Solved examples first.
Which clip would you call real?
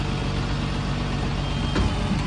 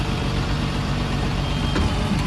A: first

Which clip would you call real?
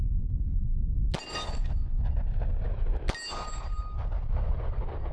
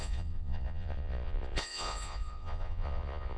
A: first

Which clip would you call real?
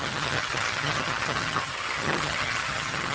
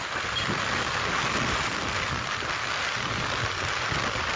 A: second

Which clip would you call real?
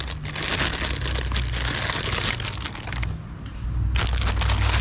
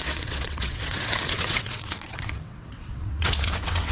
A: first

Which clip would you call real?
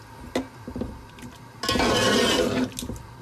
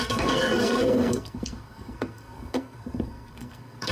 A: first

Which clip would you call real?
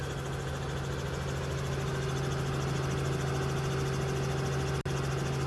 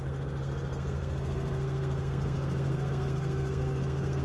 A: first